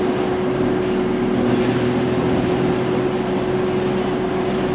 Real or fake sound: real